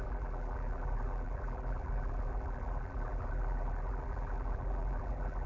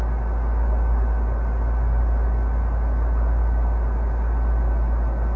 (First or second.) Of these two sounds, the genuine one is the second